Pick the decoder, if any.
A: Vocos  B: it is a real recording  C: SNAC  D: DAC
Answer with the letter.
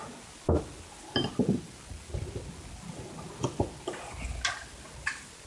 B